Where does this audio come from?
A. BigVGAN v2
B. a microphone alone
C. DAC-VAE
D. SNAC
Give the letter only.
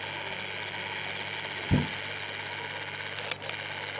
B